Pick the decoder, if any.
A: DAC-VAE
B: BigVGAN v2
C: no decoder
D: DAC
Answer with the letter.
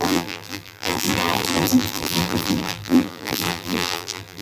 B